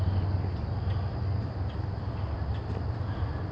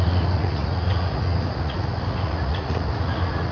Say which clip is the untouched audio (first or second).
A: first